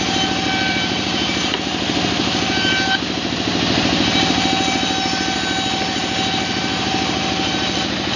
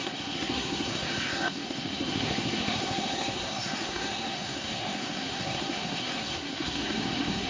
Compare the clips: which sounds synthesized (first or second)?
second